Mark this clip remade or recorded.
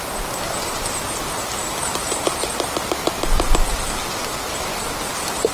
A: remade